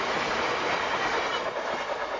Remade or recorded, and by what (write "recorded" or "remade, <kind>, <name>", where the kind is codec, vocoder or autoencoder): recorded